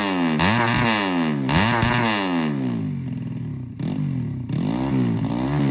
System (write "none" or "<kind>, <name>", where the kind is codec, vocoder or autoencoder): none